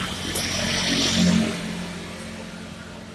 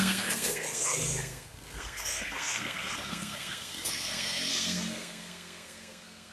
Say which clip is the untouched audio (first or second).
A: first